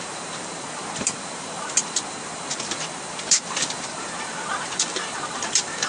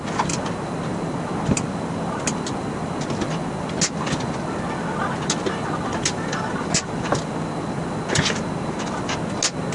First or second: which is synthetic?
first